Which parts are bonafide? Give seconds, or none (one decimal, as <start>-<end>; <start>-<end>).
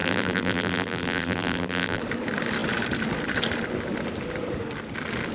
2.0-5.3